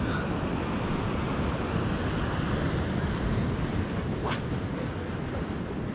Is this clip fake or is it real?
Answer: real